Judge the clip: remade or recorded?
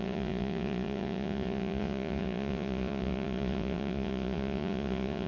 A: remade